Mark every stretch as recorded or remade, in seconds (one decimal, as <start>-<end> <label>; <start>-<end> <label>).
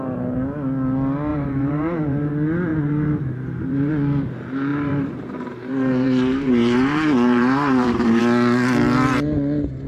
0.0-1.3 recorded; 1.3-2.3 remade; 2.3-2.7 recorded; 2.7-3.9 remade; 3.9-4.7 recorded; 4.7-8.2 remade; 8.2-9.9 recorded